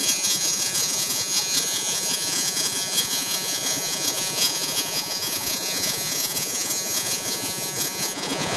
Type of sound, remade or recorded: remade